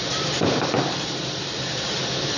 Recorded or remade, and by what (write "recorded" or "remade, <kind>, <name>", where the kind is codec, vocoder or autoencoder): remade, vocoder, BigVGAN v2